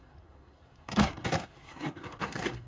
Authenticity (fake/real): fake